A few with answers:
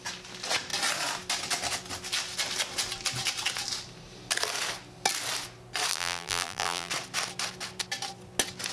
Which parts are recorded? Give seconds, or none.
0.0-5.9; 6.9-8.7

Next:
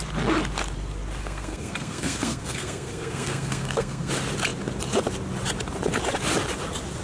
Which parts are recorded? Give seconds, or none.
0.0-1.2; 4.1-7.0

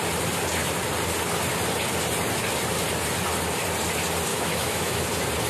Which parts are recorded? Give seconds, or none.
0.0-4.3; 5.1-5.5

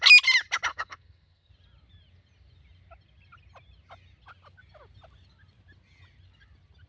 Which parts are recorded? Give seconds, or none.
0.0-0.7; 1.5-6.9